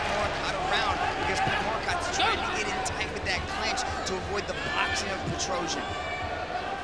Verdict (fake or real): real